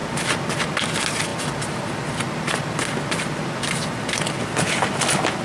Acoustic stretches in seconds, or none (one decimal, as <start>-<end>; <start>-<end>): 0.0-5.4